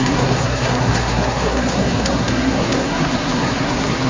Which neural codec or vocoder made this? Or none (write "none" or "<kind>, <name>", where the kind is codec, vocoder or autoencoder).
codec, SNAC